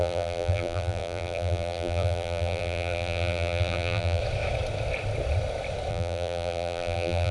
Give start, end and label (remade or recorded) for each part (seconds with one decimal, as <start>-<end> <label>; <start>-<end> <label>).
0.0-4.2 remade; 4.2-5.9 recorded; 5.9-7.3 remade